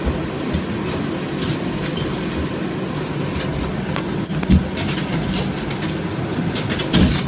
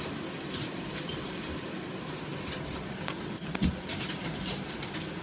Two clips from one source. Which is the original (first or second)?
first